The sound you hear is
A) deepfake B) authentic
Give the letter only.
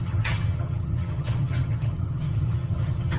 A